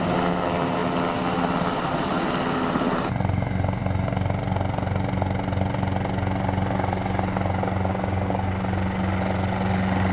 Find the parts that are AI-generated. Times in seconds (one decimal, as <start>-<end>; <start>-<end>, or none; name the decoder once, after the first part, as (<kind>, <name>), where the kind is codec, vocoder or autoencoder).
7.9-8.5 (codec, DAC)